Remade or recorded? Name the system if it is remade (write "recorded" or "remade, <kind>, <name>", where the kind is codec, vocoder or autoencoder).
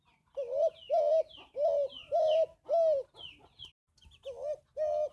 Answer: recorded